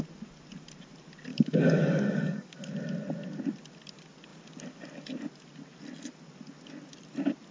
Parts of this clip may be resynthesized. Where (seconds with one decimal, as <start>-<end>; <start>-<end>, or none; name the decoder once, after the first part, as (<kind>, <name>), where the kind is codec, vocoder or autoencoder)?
1.3-2.7 (codec, DAC)